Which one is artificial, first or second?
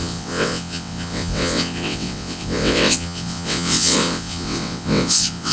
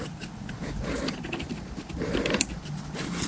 first